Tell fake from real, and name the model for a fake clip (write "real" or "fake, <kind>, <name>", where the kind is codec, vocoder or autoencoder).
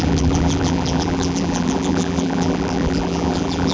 fake, vocoder, BigVGAN v2